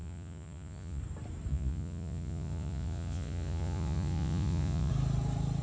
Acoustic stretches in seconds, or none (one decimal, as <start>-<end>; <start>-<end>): 1.0-1.5; 4.9-5.6